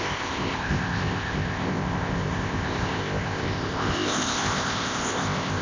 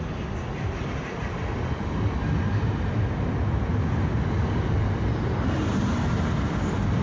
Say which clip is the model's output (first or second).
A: first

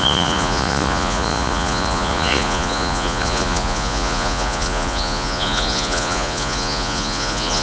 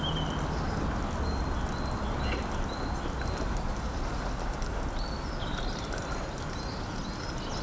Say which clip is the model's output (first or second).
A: first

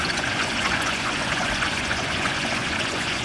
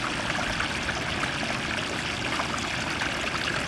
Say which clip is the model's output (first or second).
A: first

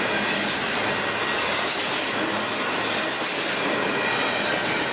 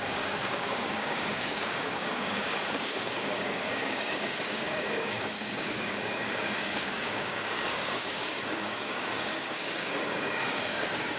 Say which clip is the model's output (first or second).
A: second